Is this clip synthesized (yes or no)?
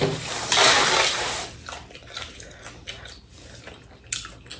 no